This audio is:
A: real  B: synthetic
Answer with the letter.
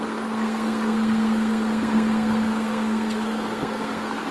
B